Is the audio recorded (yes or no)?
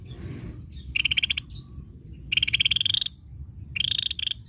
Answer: yes